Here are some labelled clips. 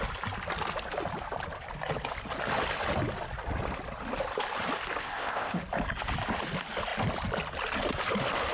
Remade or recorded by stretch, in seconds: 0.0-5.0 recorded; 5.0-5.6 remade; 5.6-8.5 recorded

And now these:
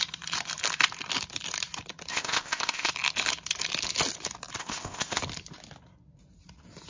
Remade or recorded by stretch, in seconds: 0.0-2.1 recorded; 2.1-2.9 remade; 2.9-4.6 recorded; 4.6-5.2 remade; 5.2-6.9 recorded